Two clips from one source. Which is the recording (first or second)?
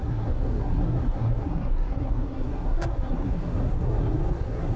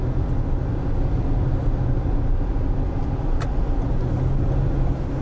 second